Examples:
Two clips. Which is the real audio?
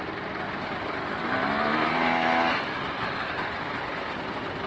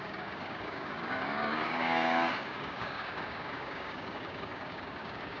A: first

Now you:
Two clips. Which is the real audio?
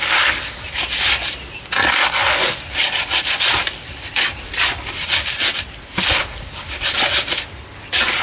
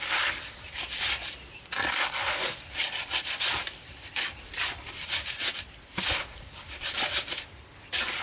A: first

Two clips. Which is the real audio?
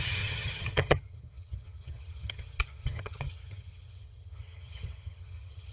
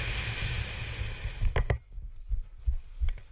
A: second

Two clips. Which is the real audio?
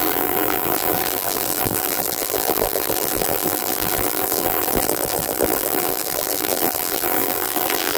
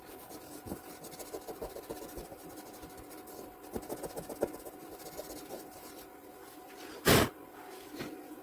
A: second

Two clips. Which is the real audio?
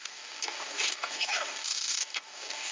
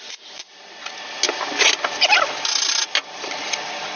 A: second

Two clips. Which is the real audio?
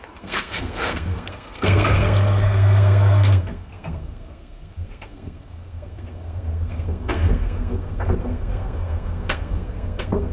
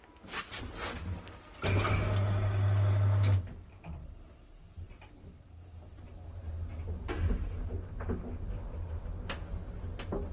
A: second